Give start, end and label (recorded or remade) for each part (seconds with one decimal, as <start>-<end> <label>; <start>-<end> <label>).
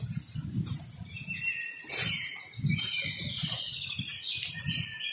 0.0-5.1 recorded